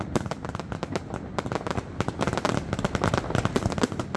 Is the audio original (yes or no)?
yes